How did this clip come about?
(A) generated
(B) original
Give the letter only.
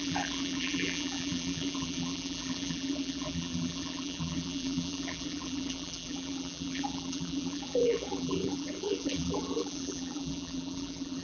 A